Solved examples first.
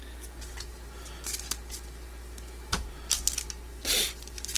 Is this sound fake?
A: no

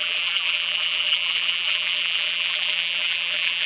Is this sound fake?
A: yes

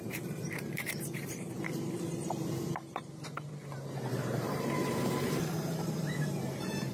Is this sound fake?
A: yes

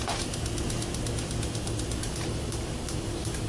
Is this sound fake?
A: no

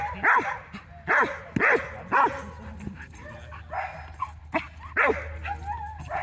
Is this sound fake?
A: no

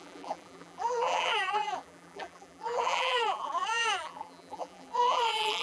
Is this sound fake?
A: yes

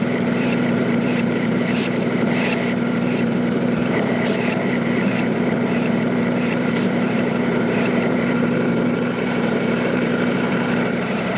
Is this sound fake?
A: yes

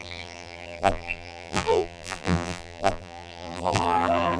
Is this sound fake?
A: yes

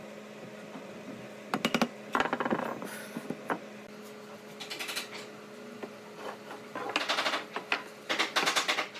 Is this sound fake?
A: no